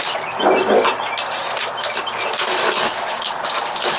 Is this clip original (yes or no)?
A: yes